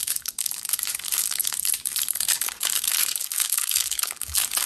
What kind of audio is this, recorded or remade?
remade